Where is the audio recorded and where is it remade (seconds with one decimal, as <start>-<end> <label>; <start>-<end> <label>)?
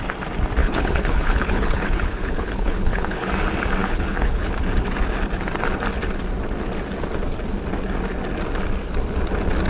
0.0-0.6 recorded; 0.6-3.3 remade; 3.3-3.8 recorded; 3.8-4.5 remade; 4.5-9.7 recorded